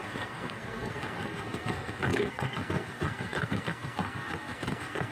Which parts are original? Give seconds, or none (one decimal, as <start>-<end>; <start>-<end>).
none